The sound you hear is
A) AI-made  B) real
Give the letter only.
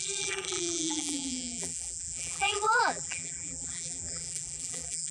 A